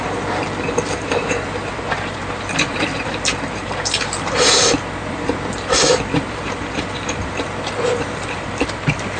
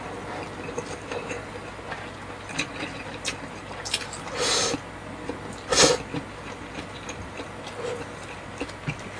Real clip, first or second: second